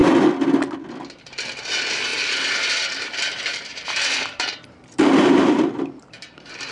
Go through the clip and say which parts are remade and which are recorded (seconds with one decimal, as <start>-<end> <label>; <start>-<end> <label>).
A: 0.0-1.2 recorded; 1.2-2.1 remade; 2.1-2.9 recorded; 2.9-6.7 remade